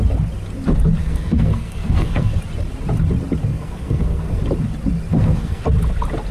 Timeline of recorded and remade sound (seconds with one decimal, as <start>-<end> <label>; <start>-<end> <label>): 0.0-1.0 recorded; 1.0-2.4 remade; 2.4-3.5 recorded; 3.5-4.4 remade; 4.4-5.1 recorded; 5.1-5.6 remade; 5.6-6.3 recorded